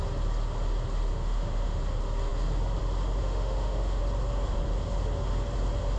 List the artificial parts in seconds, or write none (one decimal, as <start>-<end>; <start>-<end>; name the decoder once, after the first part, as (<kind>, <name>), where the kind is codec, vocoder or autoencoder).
1.1-1.8 (autoencoder, DAC-VAE); 3.2-4.0